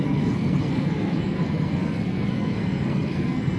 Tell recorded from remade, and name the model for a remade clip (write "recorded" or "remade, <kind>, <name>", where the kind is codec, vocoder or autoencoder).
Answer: remade, codec, SNAC